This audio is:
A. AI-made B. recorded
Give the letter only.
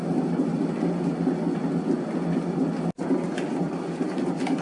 B